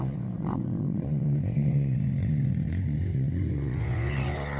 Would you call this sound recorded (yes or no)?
no